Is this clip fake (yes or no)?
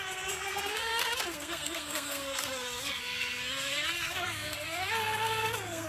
yes